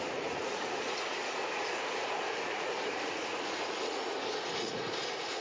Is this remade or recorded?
remade